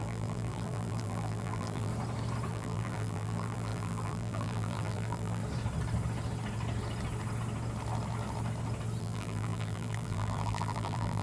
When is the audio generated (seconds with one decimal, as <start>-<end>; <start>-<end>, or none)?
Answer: 0.0-1.9; 2.5-5.4; 9.0-11.2